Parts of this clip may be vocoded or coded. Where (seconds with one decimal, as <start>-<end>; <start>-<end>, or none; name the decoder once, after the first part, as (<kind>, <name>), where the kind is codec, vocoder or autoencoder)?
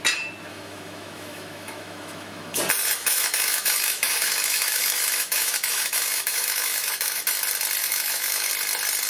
0.5-2.6 (autoencoder, DAC-VAE); 3.0-7.2; 7.8-8.5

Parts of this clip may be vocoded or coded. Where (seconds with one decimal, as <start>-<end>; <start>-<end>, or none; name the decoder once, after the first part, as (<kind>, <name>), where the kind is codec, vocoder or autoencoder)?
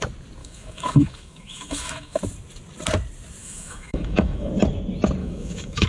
0.4-2.2 (autoencoder, DAC-VAE); 3.4-4.5; 5.2-5.9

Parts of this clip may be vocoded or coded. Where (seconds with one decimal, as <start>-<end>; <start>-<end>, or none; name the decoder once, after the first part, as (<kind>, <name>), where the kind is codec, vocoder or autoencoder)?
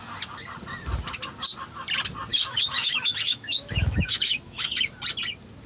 2.3-5.0 (autoencoder, DAC-VAE)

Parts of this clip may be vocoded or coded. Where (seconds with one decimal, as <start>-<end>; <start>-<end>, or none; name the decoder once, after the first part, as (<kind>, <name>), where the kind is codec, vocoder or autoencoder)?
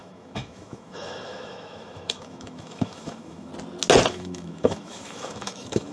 0.0-3.5 (autoencoder, DAC-VAE); 4.1-5.9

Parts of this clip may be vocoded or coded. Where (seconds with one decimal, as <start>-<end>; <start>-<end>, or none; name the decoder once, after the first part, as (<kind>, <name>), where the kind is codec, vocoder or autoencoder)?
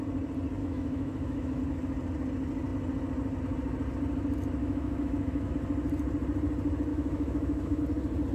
0.6-1.6 (autoencoder, DAC-VAE); 4.6-5.5; 6.9-7.8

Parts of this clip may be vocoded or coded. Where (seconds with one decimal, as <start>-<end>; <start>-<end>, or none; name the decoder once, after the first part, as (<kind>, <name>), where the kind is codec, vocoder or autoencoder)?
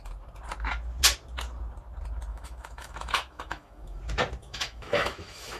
2.3-4.0 (autoencoder, DAC-VAE); 4.4-5.6